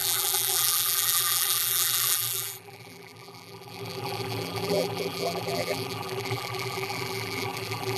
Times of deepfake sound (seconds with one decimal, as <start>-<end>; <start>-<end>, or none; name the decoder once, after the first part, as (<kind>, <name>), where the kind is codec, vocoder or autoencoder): 0.0-8.0 (vocoder, BigVGAN v2)